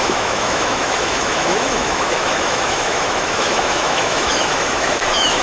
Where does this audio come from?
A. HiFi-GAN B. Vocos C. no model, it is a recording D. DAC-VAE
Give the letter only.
D